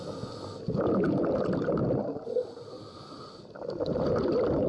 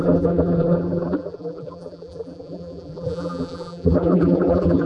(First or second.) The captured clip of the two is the first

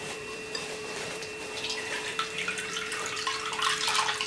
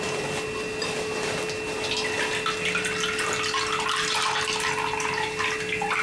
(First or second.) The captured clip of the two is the second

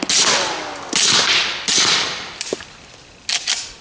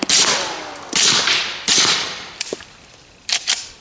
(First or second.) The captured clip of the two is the first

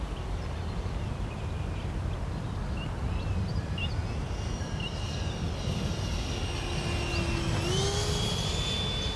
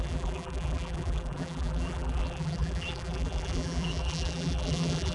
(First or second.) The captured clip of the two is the first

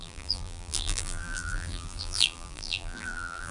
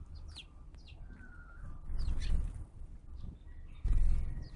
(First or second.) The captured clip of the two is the second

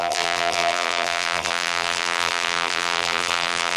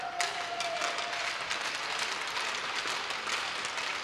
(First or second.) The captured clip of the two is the second